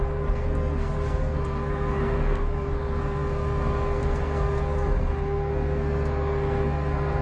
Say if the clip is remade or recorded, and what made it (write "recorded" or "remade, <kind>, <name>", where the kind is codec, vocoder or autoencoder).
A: remade, codec, SNAC